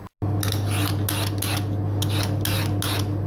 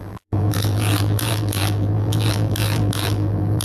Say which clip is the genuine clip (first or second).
first